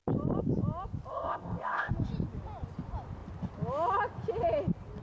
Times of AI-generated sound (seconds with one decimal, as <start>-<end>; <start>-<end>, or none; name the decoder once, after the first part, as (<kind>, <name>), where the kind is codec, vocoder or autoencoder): 1.1-1.9 (codec, ZipCodec)